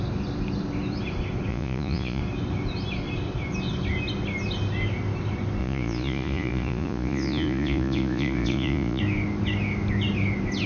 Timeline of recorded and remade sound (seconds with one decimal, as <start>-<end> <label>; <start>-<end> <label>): 0.0-1.5 recorded; 1.5-2.2 remade; 2.2-5.6 recorded; 5.6-9.0 remade; 9.0-10.7 recorded